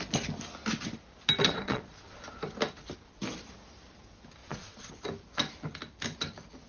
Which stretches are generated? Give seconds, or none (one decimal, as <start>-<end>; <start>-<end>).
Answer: 1.4-2.2; 4.4-4.9